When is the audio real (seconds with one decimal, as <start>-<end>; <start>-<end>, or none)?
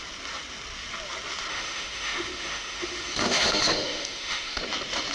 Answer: 0.0-1.5; 4.6-5.1